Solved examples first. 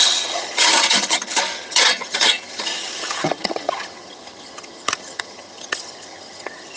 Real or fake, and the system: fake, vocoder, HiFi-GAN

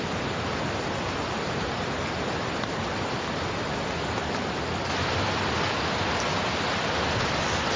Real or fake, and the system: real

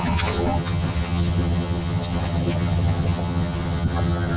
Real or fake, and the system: fake, vocoder, HiFi-GAN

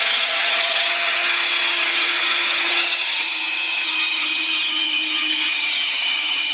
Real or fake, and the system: fake, vocoder, HiFi-GAN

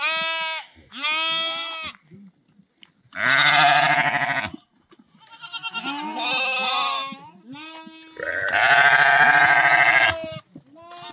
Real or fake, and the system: real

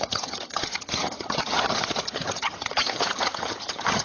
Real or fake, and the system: fake, vocoder, HiFi-GAN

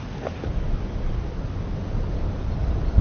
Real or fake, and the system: real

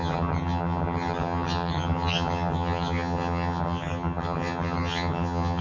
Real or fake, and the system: fake, vocoder, HiFi-GAN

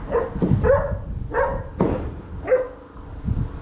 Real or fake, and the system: real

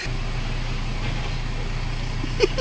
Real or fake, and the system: real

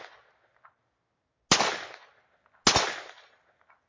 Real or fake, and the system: real